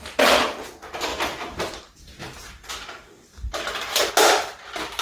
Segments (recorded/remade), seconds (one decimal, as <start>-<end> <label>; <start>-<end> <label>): 0.0-1.1 recorded; 1.1-2.7 remade; 2.7-3.3 recorded; 3.3-4.1 remade; 4.1-5.0 recorded